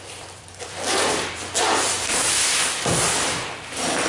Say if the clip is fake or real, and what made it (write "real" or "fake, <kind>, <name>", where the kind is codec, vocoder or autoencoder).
fake, vocoder, BigVGAN v2